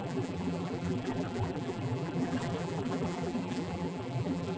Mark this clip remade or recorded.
remade